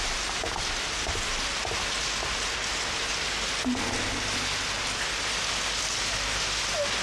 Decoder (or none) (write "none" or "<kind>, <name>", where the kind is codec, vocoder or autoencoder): none